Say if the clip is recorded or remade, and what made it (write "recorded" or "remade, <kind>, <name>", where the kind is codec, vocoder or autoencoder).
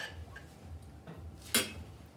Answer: recorded